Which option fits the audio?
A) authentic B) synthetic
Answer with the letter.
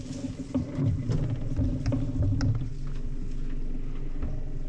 A